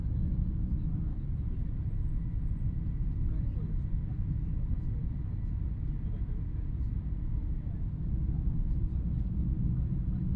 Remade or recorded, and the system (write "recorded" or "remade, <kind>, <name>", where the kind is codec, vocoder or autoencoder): recorded